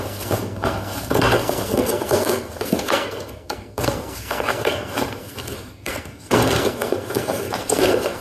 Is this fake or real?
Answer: fake